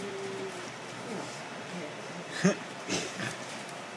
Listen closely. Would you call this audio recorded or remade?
remade